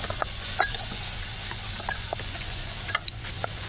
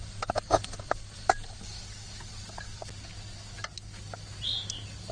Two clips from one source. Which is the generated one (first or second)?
first